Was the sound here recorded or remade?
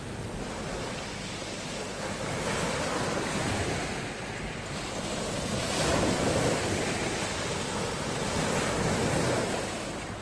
recorded